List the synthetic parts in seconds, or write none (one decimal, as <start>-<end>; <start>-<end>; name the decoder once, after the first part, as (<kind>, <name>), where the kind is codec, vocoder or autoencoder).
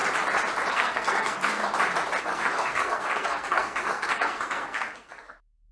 0.7-1.6 (codec, SNAC); 2.2-5.7